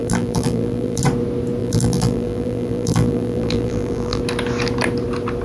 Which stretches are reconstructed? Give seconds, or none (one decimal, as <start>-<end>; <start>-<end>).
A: 0.0-1.0; 1.6-4.2